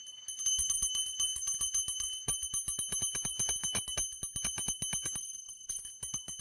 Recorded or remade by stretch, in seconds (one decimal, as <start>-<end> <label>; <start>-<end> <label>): 0.0-5.2 recorded; 5.2-5.8 remade; 5.8-6.4 recorded